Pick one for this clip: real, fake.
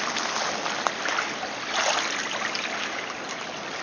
real